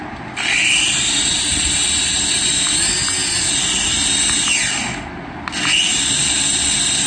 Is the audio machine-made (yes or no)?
no